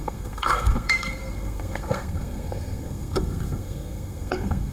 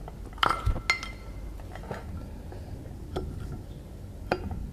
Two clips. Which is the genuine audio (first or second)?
second